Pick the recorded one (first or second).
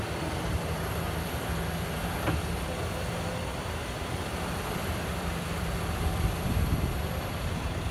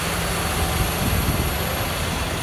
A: second